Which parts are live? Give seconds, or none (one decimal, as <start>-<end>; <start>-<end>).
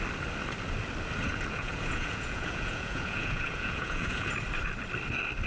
0.0-1.3; 4.3-5.5